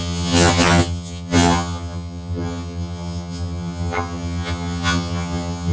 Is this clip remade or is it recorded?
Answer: remade